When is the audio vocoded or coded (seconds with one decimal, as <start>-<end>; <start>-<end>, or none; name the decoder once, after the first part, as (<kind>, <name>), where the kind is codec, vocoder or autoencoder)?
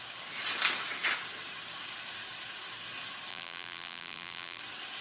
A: 3.3-4.6 (vocoder, BigVGAN v2)